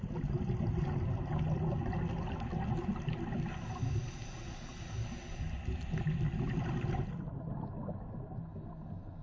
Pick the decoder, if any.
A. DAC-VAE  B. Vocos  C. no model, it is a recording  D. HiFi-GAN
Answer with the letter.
C